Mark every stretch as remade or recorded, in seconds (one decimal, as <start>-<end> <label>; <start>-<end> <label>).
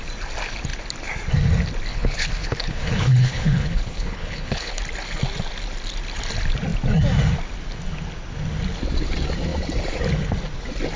0.0-1.9 recorded; 1.9-4.8 remade; 4.8-11.0 recorded